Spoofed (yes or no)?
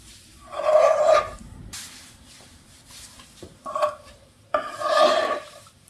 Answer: yes